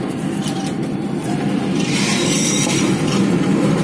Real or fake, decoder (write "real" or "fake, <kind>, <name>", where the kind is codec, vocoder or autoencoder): fake, vocoder, BigVGAN v2